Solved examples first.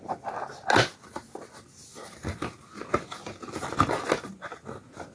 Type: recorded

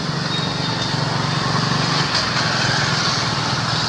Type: recorded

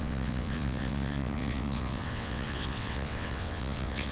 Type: remade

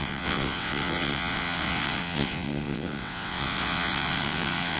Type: remade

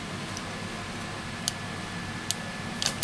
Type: recorded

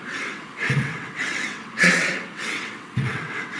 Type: remade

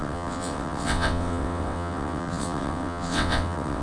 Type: remade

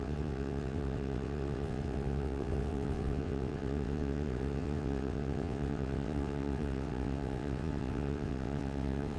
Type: remade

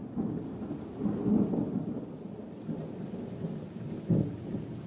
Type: recorded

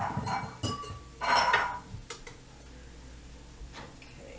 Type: recorded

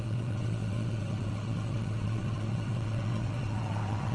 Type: remade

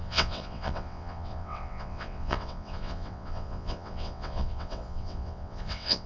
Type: remade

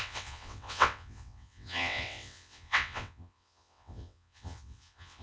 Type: remade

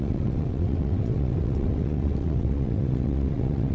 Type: remade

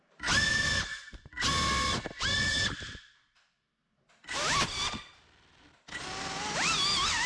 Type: recorded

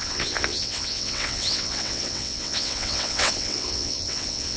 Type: remade